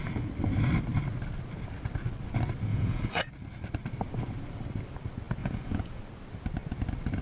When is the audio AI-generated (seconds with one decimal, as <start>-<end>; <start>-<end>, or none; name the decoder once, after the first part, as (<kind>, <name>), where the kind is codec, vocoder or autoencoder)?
2.7-3.3 (vocoder, Vocos); 5.4-6.0